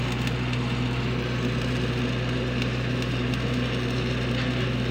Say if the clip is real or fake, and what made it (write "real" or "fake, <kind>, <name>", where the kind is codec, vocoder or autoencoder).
real